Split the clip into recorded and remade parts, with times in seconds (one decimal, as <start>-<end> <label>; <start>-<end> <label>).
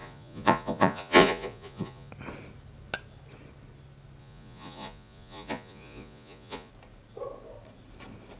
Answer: 0.0-2.1 remade; 2.1-4.2 recorded; 4.2-6.7 remade; 6.7-8.4 recorded